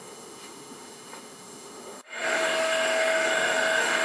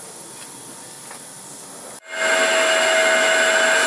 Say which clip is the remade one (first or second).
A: first